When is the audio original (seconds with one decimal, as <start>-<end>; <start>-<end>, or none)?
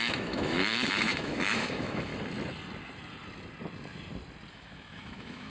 2.1-4.5